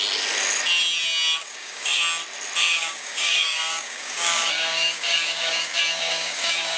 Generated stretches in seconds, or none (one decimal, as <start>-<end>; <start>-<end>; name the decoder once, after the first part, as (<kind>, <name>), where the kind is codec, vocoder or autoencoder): 1.4-2.0 (codec, DAC); 2.6-6.8